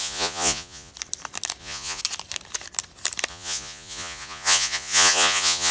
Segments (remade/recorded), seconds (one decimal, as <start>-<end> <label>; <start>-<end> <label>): 0.0-0.9 remade; 0.9-1.6 recorded; 1.6-2.0 remade; 2.0-3.3 recorded; 3.3-5.7 remade